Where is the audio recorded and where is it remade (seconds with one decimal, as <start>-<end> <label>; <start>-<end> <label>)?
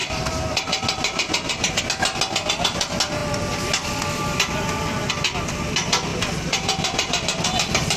0.0-1.8 remade; 1.8-6.1 recorded; 6.1-8.0 remade